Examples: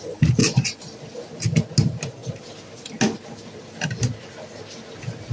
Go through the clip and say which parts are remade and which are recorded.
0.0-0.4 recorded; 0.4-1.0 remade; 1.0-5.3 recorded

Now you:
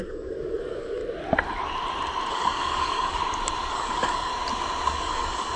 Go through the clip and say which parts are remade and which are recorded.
0.0-1.0 remade; 1.0-2.3 recorded; 2.3-3.2 remade; 3.2-3.7 recorded; 3.7-4.3 remade; 4.3-4.9 recorded; 4.9-5.6 remade